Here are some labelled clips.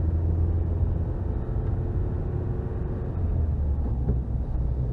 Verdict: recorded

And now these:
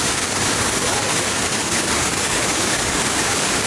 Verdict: remade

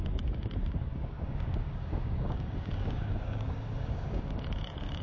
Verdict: remade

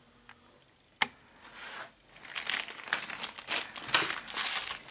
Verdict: recorded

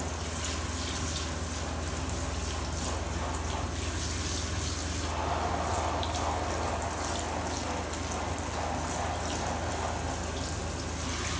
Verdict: recorded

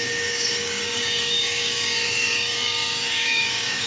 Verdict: remade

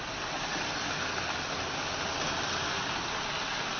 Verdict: recorded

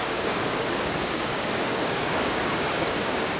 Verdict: remade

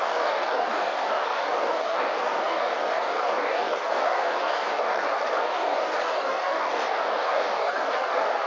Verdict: remade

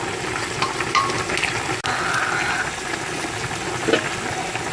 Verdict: recorded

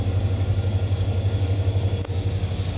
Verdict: remade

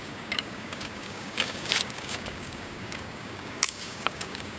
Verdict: remade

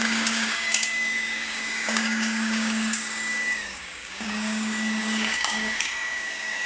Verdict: remade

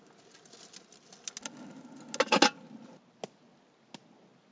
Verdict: recorded